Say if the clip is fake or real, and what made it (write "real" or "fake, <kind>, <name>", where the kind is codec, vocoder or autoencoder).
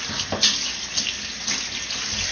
real